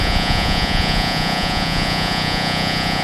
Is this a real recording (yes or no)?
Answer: no